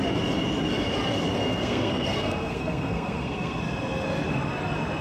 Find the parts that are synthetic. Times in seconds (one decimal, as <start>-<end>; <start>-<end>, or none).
1.4-3.6